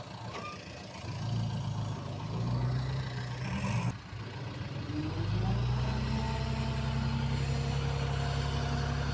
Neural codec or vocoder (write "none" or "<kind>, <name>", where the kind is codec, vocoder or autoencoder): none